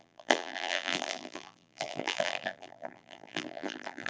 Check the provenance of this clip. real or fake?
fake